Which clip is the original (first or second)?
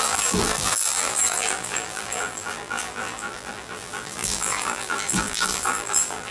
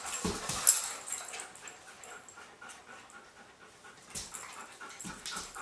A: second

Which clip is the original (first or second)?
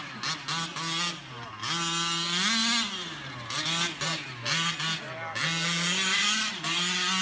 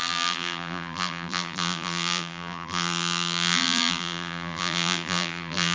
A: first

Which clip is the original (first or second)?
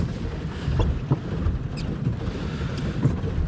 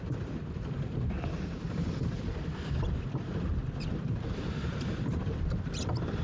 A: first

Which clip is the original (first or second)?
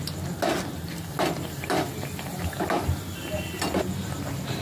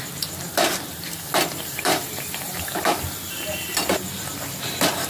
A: first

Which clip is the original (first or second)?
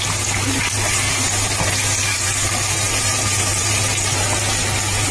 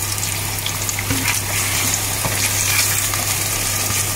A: second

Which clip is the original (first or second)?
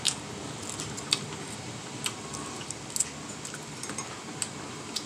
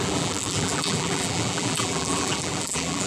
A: first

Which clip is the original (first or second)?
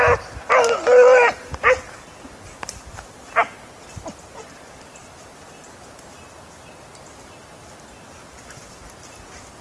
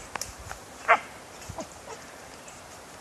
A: first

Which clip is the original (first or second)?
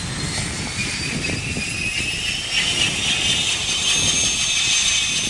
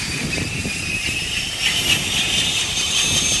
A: first